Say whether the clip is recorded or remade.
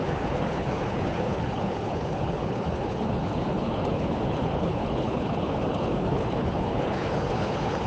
remade